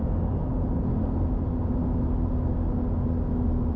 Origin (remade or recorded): recorded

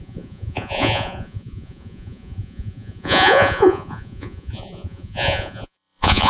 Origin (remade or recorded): remade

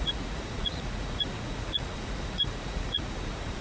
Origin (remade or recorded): remade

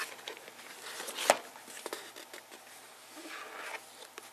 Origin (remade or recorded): recorded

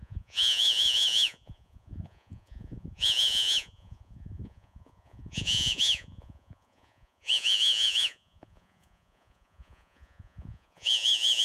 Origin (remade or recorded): remade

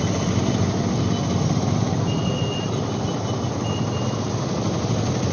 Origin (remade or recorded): recorded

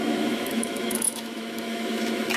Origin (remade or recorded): remade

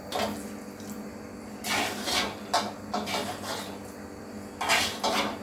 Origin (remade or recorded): recorded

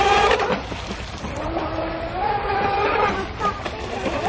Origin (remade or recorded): recorded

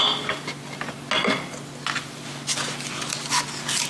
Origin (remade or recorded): recorded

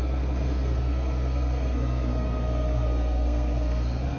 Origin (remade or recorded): remade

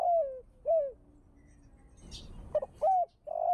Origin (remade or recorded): recorded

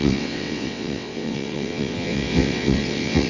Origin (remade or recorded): remade